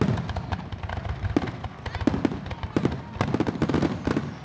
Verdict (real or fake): real